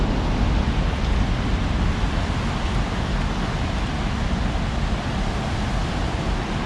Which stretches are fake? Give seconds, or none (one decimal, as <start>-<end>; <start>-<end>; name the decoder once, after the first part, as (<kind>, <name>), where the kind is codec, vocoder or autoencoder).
none